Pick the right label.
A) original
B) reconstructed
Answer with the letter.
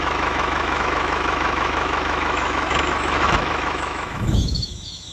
B